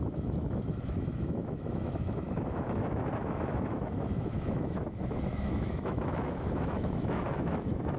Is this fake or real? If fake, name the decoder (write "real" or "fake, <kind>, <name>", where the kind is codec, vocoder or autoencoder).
fake, autoencoder, DAC-VAE